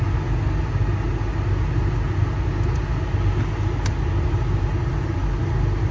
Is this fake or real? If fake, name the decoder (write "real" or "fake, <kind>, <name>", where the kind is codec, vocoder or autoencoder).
real